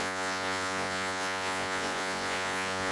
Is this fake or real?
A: fake